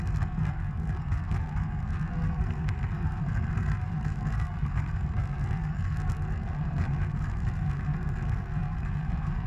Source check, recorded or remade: remade